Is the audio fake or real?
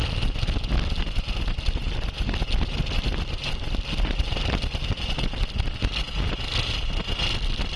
real